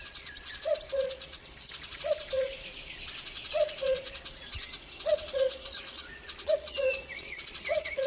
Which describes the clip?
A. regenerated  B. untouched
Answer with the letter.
A